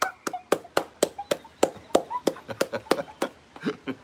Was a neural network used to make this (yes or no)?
no